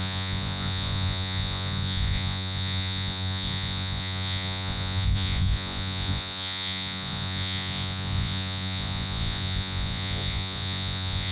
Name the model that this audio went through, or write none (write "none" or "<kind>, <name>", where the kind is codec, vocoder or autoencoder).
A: vocoder, Vocos